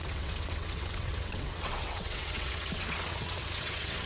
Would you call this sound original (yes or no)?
no